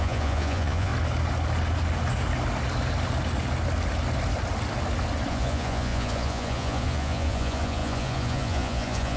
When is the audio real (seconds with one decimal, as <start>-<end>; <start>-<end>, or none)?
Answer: 0.9-5.3